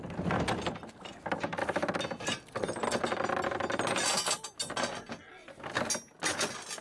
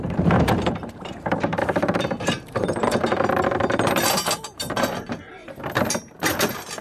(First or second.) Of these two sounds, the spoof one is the second